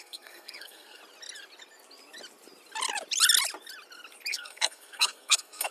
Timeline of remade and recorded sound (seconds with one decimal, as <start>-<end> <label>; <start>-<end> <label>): 0.0-1.0 remade; 1.0-4.3 recorded; 4.3-5.7 remade